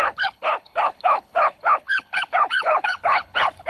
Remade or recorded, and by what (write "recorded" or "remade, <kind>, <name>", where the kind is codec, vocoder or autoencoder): remade, codec, HILCodec